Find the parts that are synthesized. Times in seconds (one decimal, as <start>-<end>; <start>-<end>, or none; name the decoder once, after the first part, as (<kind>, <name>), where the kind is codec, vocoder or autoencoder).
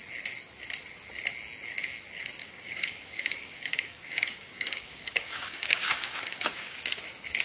2.4-6.8 (codec, DAC)